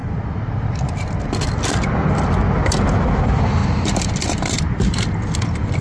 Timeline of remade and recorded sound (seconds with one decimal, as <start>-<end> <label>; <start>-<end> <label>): 0.0-3.6 recorded; 3.6-4.1 remade; 4.1-5.8 recorded